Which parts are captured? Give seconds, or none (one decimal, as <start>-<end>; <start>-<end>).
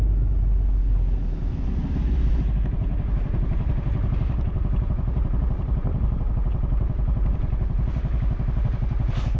0.0-2.9; 6.3-9.4